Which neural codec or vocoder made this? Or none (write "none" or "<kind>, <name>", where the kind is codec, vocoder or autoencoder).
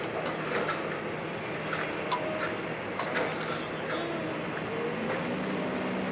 none